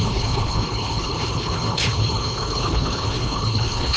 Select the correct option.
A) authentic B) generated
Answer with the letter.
B